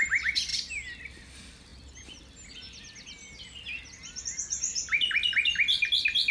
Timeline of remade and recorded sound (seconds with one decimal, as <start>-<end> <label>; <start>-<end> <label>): 0.0-6.3 recorded